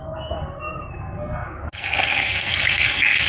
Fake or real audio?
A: fake